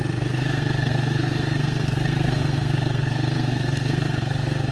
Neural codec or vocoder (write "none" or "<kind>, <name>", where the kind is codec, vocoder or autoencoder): codec, SNAC